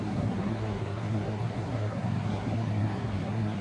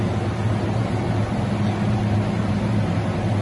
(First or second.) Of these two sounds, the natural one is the second